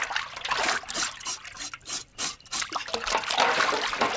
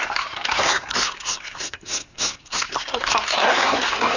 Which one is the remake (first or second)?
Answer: second